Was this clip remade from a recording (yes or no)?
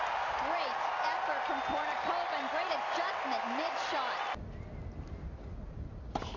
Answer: no